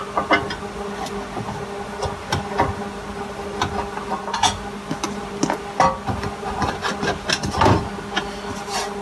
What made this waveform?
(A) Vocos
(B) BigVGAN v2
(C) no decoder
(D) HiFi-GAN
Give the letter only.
C